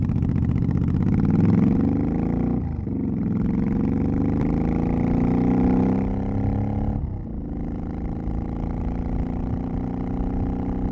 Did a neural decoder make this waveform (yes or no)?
no